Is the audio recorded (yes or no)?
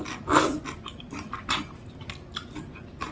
yes